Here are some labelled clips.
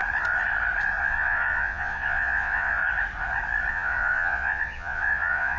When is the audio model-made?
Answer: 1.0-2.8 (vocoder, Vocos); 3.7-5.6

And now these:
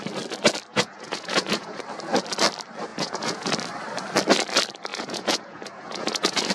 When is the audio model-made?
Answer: 0.7-1.8 (vocoder, Vocos); 2.9-3.5; 4.9-6.5

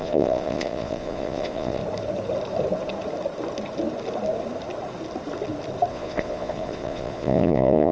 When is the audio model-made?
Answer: 0.0-1.8 (vocoder, Vocos); 5.9-7.9

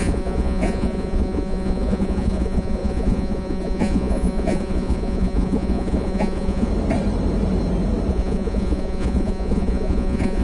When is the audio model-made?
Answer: 0.0-6.7 (vocoder, Vocos); 8.1-10.4

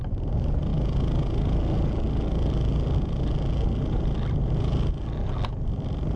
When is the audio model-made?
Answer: none